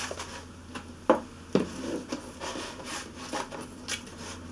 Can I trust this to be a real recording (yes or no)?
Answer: yes